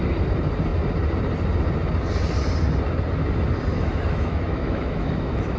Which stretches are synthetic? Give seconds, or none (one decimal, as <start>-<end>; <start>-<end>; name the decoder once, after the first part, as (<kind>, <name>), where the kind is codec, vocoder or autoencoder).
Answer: 3.7-5.6 (autoencoder, DAC-VAE)